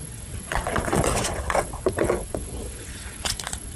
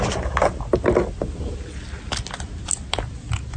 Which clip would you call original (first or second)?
second